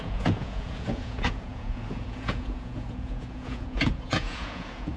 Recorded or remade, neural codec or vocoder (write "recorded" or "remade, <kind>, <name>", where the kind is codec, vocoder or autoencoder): remade, vocoder, Vocos